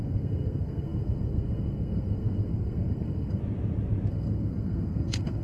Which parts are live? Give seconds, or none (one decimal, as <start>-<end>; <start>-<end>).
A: 3.4-4.1